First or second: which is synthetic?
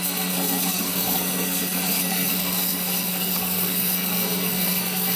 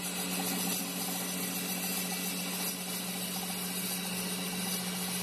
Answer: first